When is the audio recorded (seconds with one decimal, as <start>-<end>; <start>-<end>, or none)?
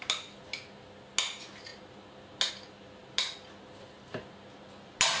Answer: 0.0-5.2